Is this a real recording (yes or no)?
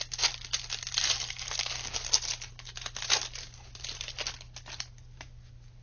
yes